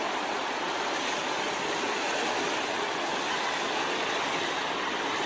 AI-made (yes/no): no